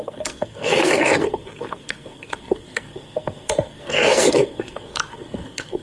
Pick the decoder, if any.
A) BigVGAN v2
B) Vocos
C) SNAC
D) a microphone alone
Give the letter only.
C